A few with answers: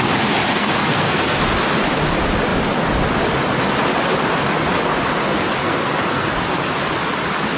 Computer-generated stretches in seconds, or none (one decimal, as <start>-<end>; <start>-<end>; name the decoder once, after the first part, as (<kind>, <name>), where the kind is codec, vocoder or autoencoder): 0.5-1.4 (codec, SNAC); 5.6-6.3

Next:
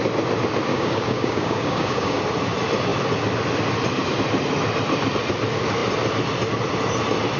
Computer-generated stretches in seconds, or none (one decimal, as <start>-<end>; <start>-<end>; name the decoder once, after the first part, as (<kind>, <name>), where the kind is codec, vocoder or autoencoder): 0.7-2.2 (codec, DAC)

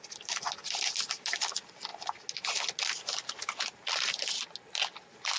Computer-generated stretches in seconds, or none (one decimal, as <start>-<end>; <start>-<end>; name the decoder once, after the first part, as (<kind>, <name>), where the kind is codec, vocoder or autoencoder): none

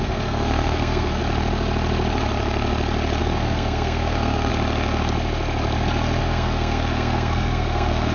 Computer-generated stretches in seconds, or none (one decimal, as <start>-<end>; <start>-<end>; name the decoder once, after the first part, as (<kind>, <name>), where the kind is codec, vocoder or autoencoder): 0.0-1.2 (codec, SNAC); 3.2-4.5; 6.2-8.1

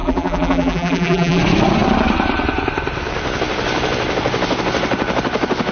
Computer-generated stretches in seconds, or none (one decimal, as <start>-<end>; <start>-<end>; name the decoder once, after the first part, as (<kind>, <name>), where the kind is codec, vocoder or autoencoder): 0.0-1.4 (vocoder, BigVGAN v2)

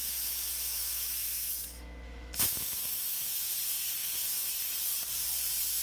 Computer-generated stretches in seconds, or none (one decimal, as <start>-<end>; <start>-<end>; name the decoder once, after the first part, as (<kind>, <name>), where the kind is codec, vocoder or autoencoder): 0.0-3.5 (autoencoder, DAC-VAE); 4.0-4.5